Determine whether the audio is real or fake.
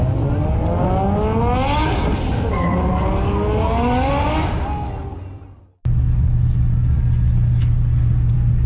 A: real